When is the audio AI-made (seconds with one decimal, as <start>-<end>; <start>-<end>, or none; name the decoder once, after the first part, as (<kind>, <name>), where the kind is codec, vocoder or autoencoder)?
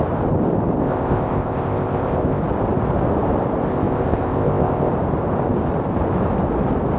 0.8-2.4 (codec, ZipCodec); 3.7-4.9